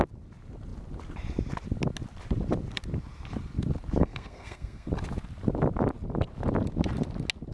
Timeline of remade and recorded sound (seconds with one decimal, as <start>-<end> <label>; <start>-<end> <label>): 0.0-4.0 recorded; 4.0-4.9 remade; 4.9-7.5 recorded